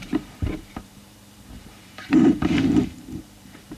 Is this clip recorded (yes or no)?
no